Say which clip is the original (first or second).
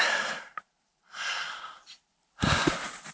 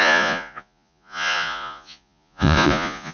first